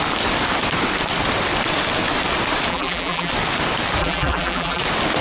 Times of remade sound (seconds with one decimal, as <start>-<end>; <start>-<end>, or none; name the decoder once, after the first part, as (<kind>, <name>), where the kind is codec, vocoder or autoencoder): 2.7-3.3 (vocoder, BigVGAN v2); 4.0-4.8